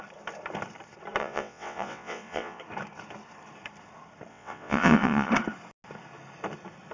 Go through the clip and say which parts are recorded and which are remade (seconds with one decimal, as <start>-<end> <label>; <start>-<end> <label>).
0.0-1.2 recorded; 1.2-2.6 remade; 2.6-4.3 recorded; 4.3-5.3 remade; 5.3-6.9 recorded